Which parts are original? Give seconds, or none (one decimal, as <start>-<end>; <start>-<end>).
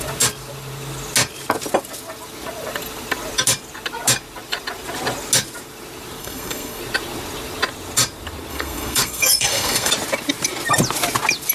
0.0-6.2; 6.8-8.5; 9.9-11.5